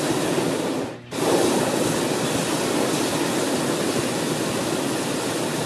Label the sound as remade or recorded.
recorded